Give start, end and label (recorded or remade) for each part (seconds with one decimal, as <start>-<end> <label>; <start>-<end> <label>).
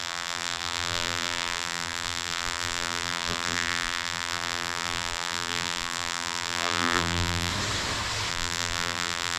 0.0-7.5 remade; 7.5-8.3 recorded; 8.3-9.4 remade